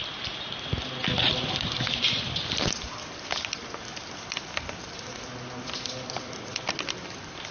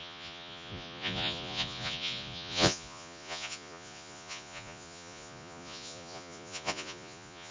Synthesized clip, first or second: second